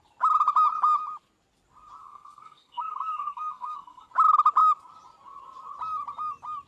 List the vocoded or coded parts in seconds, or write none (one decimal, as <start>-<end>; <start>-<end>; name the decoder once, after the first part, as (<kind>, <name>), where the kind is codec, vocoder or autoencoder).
2.0-4.1 (codec, SNAC)